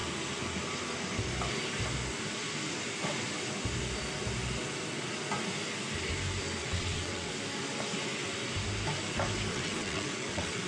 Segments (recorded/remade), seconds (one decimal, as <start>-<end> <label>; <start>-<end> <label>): 0.0-6.6 recorded; 6.6-7.3 remade; 7.3-9.5 recorded; 9.5-10.7 remade